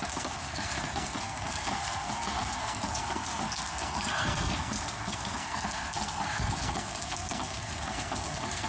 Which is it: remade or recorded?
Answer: remade